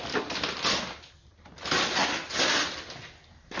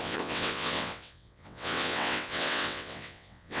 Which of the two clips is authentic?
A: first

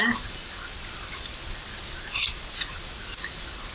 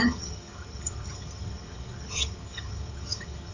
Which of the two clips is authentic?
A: first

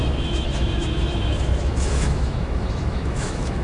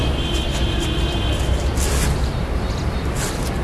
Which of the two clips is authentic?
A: second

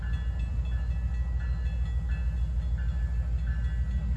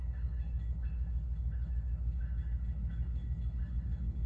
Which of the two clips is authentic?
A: first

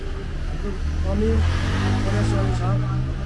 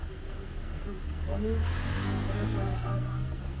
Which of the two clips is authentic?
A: first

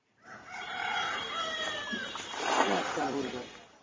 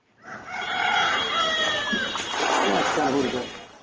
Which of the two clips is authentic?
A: second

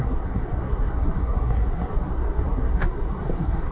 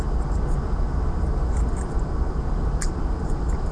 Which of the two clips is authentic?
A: second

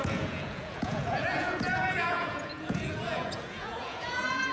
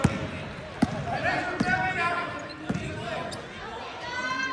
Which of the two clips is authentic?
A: second